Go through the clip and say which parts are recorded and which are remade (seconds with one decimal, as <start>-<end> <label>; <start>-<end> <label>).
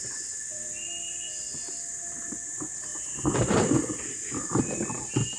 0.0-2.9 recorded; 2.9-4.6 remade; 4.6-5.4 recorded